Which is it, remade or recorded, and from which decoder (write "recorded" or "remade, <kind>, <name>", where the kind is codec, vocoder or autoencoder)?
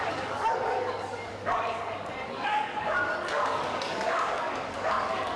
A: remade, codec, DAC